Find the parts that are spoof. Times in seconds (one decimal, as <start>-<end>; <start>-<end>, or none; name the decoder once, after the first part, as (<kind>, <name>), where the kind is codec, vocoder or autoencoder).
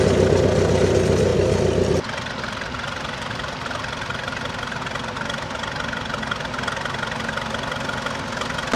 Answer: 1.3-4.8 (vocoder, BigVGAN v2)